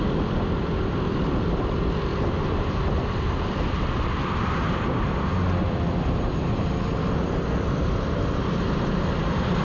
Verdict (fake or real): fake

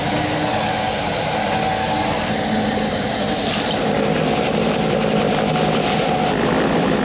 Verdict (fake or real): real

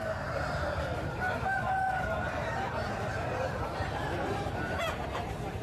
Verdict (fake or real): fake